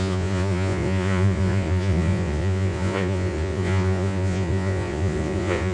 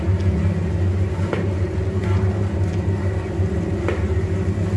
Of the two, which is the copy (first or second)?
first